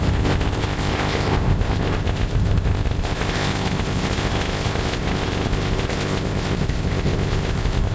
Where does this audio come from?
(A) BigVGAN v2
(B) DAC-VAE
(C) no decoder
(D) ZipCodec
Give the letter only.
D